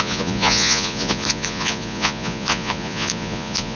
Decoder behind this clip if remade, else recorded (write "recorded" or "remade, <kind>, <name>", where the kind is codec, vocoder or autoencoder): remade, vocoder, Vocos